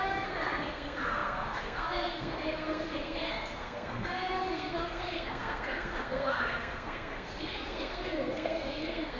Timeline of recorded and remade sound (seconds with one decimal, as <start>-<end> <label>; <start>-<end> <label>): 0.0-9.2 remade